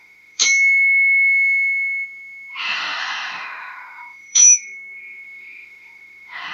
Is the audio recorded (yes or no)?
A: no